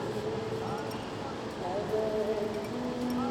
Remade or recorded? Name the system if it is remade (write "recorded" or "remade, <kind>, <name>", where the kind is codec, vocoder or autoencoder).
recorded